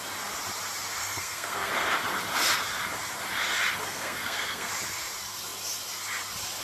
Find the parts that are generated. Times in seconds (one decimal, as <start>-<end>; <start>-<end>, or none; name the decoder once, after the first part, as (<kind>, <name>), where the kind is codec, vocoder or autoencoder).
1.0-1.7 (codec, SNAC); 3.8-4.7